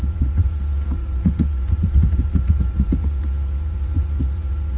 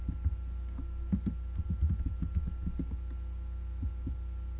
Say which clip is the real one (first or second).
second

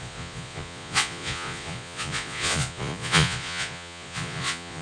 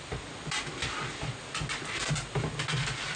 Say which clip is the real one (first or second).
second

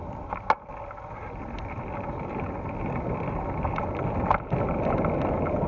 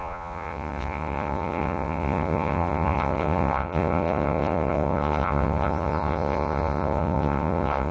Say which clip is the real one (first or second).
first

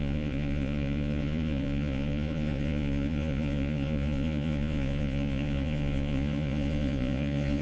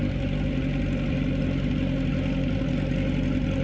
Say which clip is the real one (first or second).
second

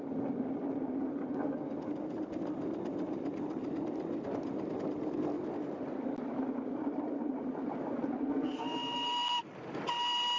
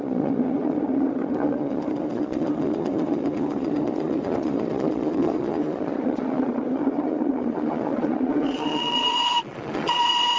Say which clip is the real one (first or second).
first